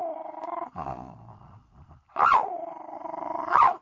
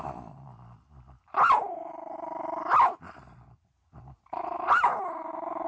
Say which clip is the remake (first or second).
first